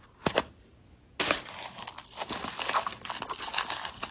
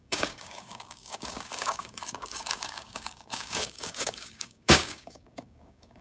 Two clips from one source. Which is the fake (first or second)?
second